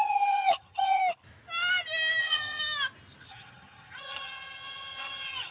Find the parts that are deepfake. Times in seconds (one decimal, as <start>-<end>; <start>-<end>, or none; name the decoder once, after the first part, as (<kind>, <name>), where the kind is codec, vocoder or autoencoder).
0.0-1.0 (vocoder, HiFi-GAN); 2.2-2.6; 3.3-5.5

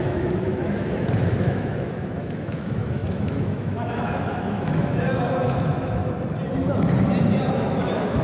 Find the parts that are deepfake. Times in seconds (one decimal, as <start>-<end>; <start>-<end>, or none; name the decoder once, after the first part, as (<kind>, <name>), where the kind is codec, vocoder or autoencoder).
0.0-6.0 (autoencoder, DAC-VAE); 7.5-8.2

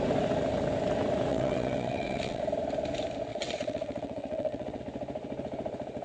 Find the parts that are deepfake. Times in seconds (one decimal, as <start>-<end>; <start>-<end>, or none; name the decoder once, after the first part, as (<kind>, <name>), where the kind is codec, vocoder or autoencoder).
1.3-2.4 (vocoder, WaveNeXt); 3.3-4.8

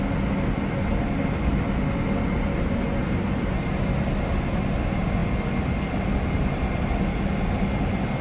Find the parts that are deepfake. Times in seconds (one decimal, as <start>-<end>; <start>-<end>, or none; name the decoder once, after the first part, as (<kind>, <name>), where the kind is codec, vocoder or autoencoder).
none

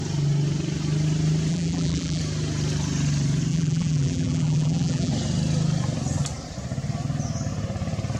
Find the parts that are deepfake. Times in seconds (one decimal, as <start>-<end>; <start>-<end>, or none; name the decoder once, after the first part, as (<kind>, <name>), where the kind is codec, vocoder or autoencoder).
1.5-2.2 (vocoder, BigVGAN v2); 3.5-5.1

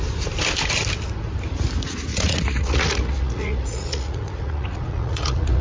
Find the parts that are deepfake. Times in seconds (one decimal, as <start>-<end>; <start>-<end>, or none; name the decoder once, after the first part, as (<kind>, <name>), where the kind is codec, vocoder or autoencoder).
2.1-5.6 (vocoder, Vocos)